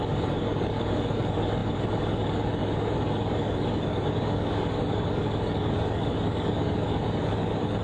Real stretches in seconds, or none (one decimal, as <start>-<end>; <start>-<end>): none